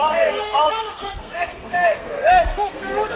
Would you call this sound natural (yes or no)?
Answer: no